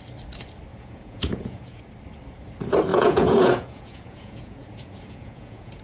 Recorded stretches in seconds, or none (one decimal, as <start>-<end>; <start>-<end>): 0.0-0.7; 1.8-2.9